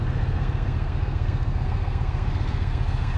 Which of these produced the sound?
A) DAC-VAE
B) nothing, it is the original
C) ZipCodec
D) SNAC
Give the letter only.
D